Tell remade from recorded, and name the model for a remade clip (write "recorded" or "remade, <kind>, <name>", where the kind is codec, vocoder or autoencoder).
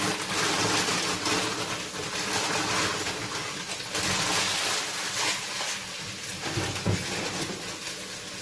recorded